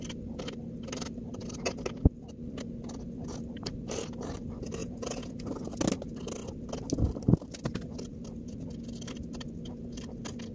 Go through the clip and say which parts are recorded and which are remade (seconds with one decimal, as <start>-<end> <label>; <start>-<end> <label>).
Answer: 0.0-4.8 recorded; 4.8-5.4 remade; 5.4-10.5 recorded